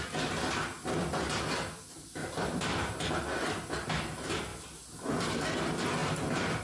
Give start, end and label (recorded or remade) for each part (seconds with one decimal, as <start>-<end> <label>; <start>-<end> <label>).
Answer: 0.0-6.6 recorded